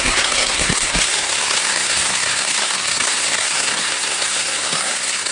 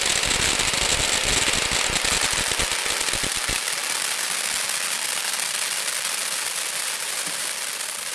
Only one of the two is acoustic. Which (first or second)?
second